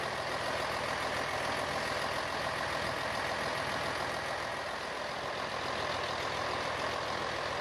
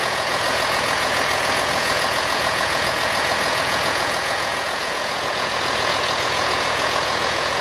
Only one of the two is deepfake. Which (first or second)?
second